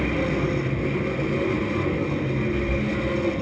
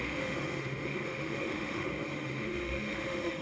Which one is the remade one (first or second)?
second